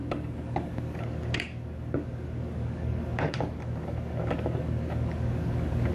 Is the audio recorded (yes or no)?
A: no